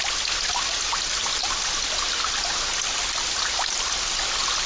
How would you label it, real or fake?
real